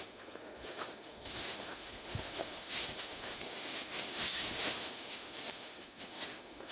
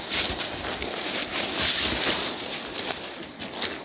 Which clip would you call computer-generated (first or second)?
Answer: first